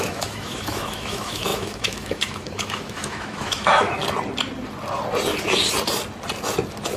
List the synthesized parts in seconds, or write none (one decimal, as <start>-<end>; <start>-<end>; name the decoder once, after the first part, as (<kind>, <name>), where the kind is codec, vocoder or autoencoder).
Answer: 0.0-4.0 (autoencoder, DAC-VAE)